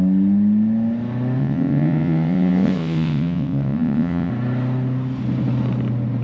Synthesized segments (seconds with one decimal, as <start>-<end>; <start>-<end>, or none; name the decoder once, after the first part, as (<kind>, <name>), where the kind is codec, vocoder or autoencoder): 1.4-4.3 (vocoder, WaveNeXt)